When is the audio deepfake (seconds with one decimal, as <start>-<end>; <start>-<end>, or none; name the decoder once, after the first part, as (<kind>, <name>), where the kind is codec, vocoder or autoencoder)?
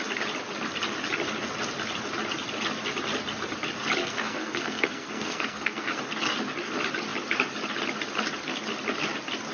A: 4.0-6.0 (codec, SNAC)